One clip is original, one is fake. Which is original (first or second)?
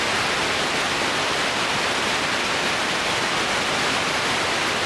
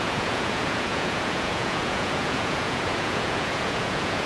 first